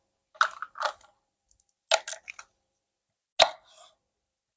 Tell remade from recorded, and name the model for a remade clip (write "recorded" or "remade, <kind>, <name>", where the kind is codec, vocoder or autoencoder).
recorded